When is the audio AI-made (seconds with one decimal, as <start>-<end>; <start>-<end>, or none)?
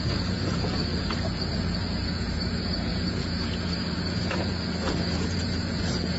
0.0-6.2